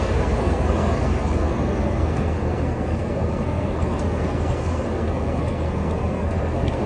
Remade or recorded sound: remade